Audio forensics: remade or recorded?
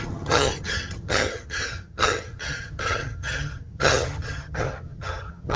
remade